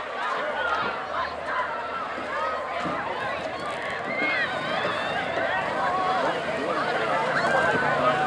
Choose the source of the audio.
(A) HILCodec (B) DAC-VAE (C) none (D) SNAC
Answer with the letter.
C